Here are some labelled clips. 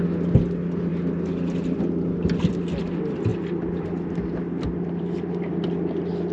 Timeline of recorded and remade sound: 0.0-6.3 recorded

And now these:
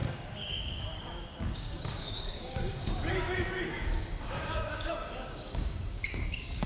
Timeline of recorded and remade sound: 0.0-6.7 remade

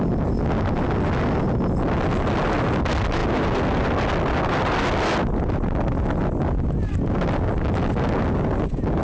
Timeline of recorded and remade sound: 0.0-9.0 recorded

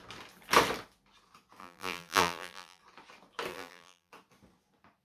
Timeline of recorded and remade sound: 0.0-1.6 recorded; 1.6-2.8 remade; 2.8-3.5 recorded; 3.5-4.1 remade; 4.1-5.0 recorded

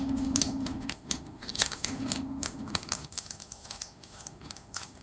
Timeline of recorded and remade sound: 0.0-5.0 remade

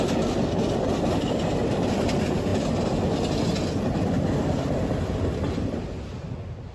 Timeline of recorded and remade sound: 0.0-6.7 recorded

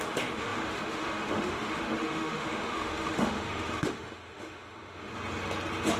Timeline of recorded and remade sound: 0.0-5.1 remade; 5.1-6.0 recorded